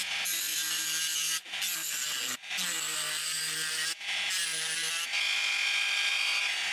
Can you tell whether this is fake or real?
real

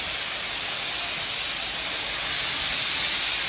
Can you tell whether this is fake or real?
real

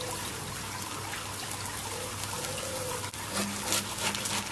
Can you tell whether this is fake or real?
real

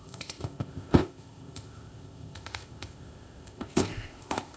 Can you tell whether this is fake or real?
fake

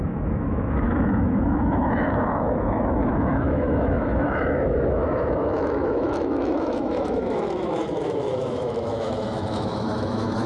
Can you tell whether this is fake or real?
fake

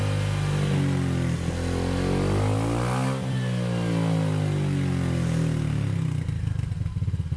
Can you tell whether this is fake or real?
real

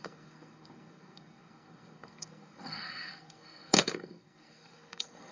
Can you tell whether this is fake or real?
fake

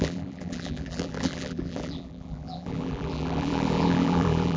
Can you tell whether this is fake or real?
fake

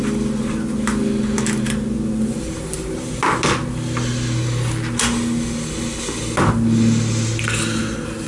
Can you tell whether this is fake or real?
real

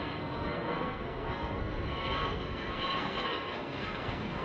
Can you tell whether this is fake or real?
fake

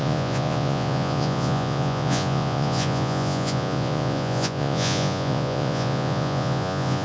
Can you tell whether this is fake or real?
fake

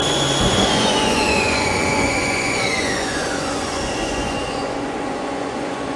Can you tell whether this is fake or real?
fake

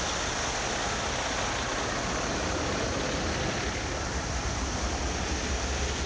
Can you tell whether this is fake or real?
real